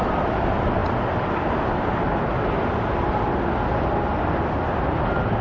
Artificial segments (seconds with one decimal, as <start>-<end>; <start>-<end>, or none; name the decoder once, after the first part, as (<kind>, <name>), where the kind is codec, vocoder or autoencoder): none